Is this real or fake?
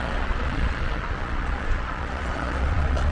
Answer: fake